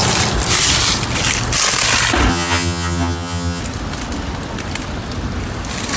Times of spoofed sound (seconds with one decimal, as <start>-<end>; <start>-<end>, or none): 2.3-3.6